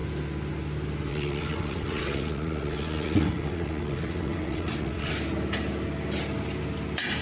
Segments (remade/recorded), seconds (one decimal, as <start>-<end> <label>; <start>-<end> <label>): 0.0-1.1 recorded; 1.1-5.1 remade; 5.1-7.2 recorded